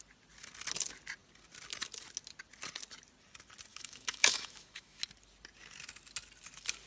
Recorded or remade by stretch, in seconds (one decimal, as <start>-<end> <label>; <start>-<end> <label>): 0.0-3.7 recorded; 3.7-5.0 remade; 5.0-6.9 recorded